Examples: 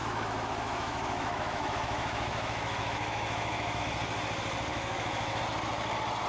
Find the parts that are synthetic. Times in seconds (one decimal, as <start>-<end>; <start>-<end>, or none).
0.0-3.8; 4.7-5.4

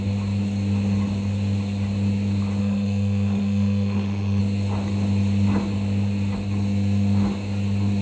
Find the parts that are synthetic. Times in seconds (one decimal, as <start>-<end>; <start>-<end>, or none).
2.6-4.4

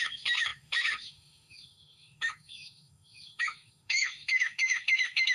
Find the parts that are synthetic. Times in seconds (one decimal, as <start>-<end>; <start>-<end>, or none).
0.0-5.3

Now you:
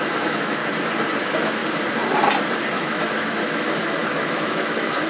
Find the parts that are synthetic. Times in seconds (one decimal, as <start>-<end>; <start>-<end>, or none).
0.0-0.6; 1.2-1.6; 2.7-5.1

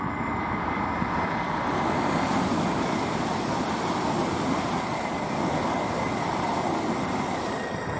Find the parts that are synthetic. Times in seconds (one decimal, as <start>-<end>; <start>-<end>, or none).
none